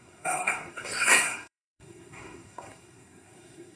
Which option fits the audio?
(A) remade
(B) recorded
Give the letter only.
A